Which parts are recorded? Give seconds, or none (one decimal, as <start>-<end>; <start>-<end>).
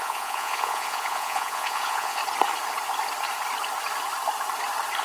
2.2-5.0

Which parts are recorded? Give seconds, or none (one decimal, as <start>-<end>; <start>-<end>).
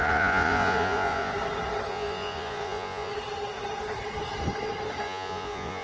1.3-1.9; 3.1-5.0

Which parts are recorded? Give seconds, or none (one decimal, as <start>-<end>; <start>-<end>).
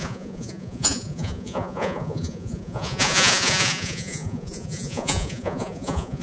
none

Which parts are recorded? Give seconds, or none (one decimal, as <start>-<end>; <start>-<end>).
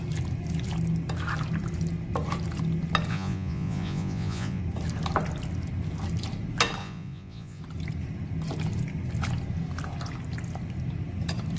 0.0-3.1; 4.6-6.8; 7.6-11.6